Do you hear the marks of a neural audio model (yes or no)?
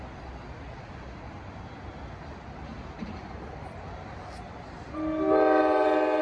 no